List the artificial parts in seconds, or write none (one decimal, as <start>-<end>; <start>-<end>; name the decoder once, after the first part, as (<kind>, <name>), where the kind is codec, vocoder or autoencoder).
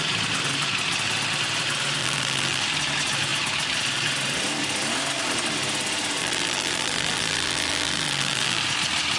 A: 2.0-2.6 (vocoder, BigVGAN v2); 6.2-8.6